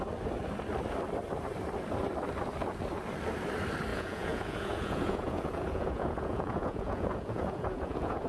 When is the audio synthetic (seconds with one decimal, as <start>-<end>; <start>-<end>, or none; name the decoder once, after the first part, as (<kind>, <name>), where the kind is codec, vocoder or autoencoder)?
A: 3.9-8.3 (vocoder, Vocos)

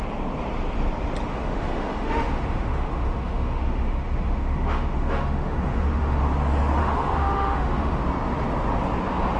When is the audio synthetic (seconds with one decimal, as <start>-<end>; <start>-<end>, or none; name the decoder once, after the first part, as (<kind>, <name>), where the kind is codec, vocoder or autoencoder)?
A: 1.3-6.2 (autoencoder, DAC-VAE); 6.8-8.0

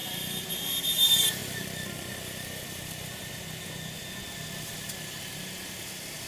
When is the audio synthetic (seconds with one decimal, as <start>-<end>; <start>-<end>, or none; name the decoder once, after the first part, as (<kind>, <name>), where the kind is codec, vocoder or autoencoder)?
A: 0.0-0.5 (vocoder, BigVGAN v2); 1.4-3.3

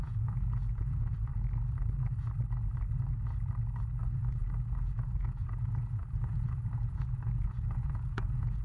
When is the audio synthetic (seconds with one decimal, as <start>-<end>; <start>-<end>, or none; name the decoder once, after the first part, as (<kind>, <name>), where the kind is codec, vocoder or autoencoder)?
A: 0.0-1.3 (vocoder, Vocos); 4.0-8.6